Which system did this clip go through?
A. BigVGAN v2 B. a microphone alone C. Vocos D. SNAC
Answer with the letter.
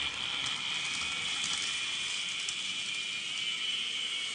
B